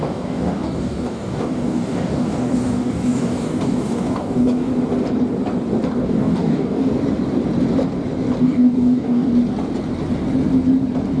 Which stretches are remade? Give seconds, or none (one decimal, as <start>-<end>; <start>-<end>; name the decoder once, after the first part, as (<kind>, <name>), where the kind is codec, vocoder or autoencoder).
0.0-4.7 (codec, DAC); 6.0-6.9; 8.4-9.3